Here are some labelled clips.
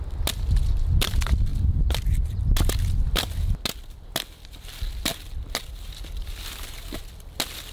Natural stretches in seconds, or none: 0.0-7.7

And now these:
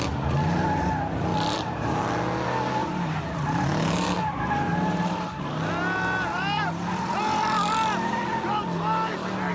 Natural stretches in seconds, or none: 0.0-1.3; 2.0-2.8; 5.7-9.5

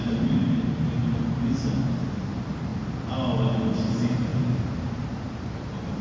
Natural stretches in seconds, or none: 1.0-2.2; 2.7-3.7